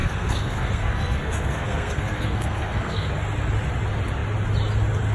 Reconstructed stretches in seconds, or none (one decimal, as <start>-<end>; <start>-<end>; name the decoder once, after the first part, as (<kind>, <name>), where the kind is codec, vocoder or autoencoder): 0.0-3.1 (codec, SNAC)